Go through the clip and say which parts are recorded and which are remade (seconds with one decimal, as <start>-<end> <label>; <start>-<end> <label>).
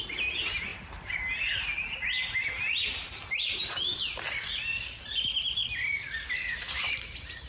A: 0.0-7.5 recorded